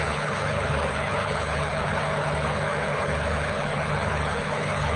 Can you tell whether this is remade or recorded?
remade